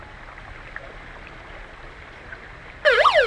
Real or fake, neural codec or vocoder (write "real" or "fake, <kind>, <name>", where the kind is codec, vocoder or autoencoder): real